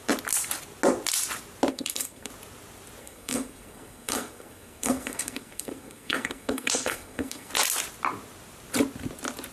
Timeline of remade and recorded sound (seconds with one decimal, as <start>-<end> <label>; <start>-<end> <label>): 0.0-1.7 recorded; 1.7-2.3 remade; 2.3-3.0 recorded; 3.0-7.5 remade; 7.5-9.5 recorded